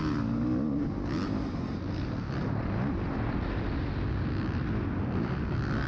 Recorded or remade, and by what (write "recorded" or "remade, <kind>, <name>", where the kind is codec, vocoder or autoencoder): recorded